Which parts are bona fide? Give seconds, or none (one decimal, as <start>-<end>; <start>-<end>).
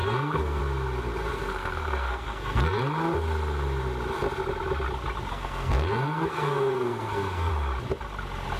0.6-1.3; 2.8-5.3; 7.5-8.6